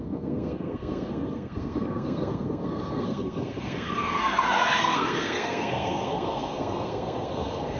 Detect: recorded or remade remade